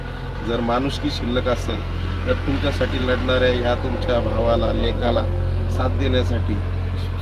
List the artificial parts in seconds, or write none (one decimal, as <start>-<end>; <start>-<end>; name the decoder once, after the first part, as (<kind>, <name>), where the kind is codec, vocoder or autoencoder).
1.6-2.5 (codec, SNAC); 4.8-5.8